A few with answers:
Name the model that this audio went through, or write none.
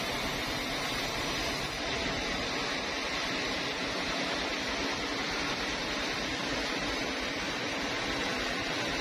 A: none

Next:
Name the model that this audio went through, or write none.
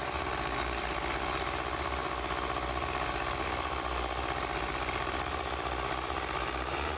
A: none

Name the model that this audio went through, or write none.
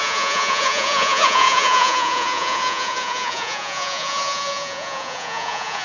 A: vocoder, Vocos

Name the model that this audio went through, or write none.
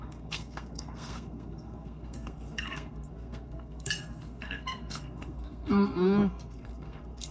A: codec, SNAC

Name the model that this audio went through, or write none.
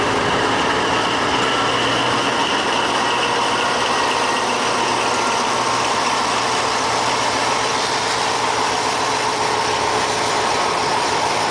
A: none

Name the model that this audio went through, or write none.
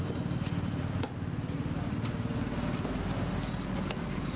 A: none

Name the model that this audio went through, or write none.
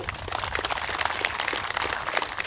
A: none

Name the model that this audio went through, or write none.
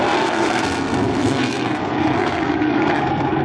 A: codec, SNAC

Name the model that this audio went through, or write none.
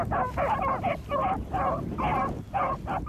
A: none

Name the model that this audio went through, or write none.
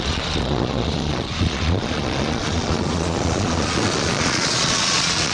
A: vocoder, Vocos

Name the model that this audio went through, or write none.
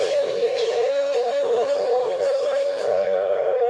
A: codec, SNAC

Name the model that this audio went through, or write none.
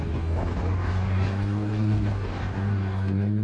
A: codec, DAC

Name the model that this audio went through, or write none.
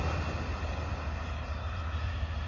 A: none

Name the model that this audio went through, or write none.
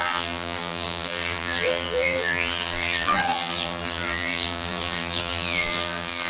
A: vocoder, BigVGAN v2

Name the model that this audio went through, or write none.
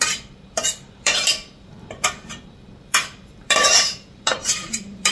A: vocoder, BigVGAN v2